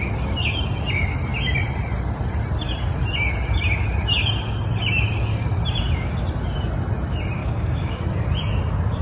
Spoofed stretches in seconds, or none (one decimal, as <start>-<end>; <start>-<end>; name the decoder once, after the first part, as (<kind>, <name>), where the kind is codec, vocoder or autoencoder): 7.4-8.0 (codec, DAC)